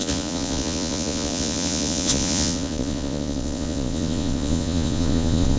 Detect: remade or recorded remade